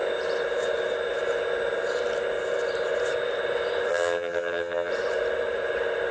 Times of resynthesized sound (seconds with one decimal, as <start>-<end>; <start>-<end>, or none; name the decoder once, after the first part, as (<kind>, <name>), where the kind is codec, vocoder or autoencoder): 3.9-4.9 (vocoder, HiFi-GAN)